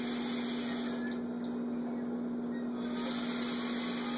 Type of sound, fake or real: real